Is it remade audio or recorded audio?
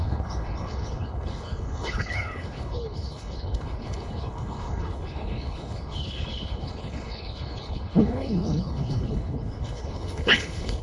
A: remade